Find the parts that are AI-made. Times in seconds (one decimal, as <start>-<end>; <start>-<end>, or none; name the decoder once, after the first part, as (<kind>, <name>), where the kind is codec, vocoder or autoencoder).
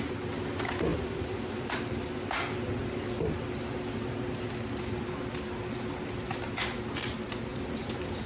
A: 0.9-1.8 (vocoder, BigVGAN v2); 7.5-8.3